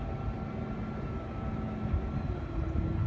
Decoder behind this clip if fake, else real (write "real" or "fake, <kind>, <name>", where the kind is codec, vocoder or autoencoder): real